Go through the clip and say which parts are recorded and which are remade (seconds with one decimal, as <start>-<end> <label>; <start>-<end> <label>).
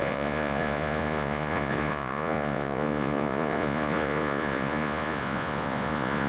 0.0-6.3 remade